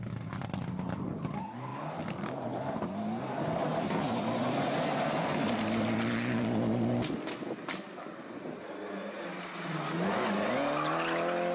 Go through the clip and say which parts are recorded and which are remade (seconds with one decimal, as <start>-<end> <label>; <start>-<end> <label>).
0.0-11.5 recorded